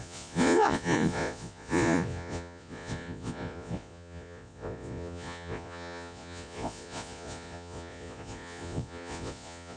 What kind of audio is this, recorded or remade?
remade